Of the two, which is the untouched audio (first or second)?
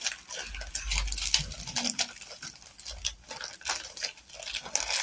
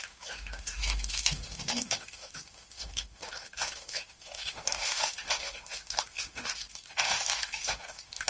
first